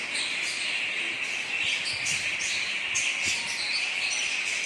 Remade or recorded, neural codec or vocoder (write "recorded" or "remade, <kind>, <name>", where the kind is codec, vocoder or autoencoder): recorded